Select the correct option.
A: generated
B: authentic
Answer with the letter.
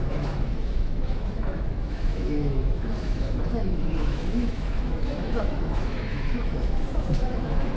A